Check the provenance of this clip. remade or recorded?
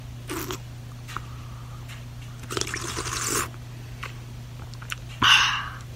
recorded